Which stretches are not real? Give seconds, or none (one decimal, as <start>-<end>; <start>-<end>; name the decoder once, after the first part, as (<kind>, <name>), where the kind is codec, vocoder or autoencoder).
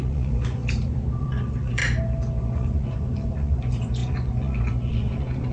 0.0-0.6 (vocoder, Vocos); 1.2-1.8; 2.4-5.5